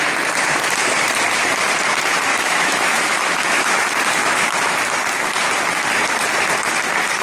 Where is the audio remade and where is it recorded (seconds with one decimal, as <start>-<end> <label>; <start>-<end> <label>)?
0.0-2.3 recorded; 2.3-3.7 remade; 3.7-4.2 recorded; 4.2-4.8 remade; 4.8-7.2 recorded